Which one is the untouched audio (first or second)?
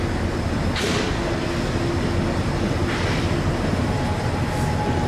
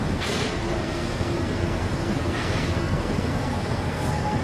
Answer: first